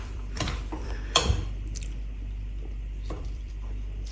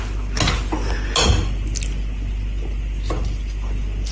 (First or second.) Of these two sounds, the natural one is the second